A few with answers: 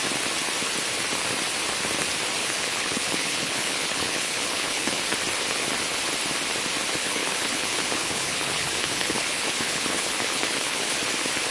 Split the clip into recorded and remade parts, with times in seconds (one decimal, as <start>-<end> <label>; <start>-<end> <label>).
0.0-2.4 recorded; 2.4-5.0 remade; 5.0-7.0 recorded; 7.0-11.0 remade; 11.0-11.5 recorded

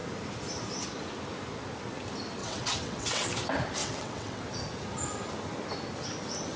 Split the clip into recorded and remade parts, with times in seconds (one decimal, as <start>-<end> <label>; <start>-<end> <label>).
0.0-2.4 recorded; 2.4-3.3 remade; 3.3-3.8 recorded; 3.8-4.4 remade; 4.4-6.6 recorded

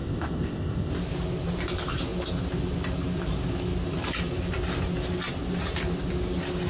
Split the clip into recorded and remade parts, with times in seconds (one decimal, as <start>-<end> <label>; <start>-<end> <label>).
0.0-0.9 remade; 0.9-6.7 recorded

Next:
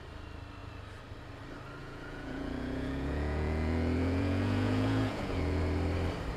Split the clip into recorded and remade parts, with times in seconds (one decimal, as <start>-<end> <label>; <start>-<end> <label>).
0.0-1.8 recorded; 1.8-5.6 remade; 5.6-6.4 recorded

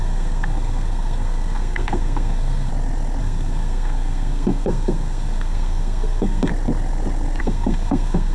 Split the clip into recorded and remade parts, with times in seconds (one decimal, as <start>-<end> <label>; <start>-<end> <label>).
0.0-2.7 remade; 2.7-3.2 recorded; 3.2-6.5 remade; 6.5-7.4 recorded; 7.4-8.3 remade